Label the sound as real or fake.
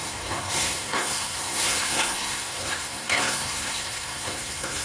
fake